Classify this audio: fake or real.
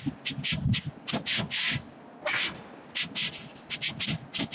real